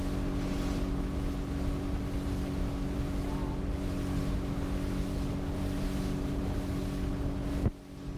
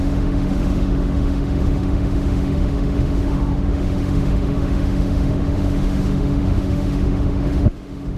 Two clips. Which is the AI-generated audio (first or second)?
second